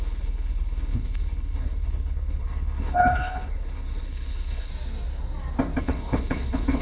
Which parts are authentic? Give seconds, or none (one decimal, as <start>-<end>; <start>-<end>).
4.7-5.8